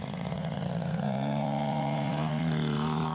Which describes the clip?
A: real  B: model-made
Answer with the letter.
B